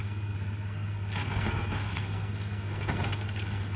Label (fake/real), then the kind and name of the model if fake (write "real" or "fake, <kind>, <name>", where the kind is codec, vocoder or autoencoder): fake, codec, SNAC